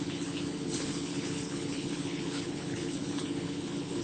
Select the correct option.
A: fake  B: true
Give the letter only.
A